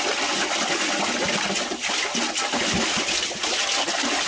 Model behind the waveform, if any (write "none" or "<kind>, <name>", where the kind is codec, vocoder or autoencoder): none